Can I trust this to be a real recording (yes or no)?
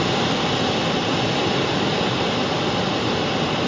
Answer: yes